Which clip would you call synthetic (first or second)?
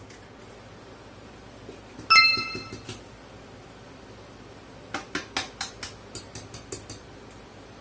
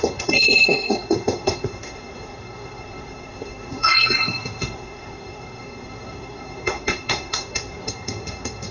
second